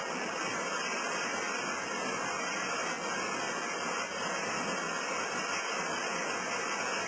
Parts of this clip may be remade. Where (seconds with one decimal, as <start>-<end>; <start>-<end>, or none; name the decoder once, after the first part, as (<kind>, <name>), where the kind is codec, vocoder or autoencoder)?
none